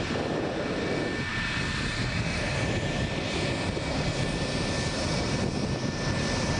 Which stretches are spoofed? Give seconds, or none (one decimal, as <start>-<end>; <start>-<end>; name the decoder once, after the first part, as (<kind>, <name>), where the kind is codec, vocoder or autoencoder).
none